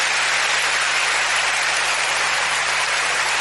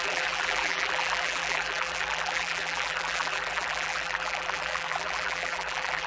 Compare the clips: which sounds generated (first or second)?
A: second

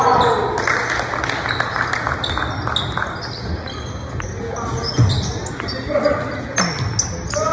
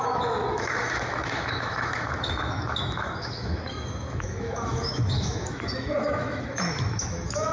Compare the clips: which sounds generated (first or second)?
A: second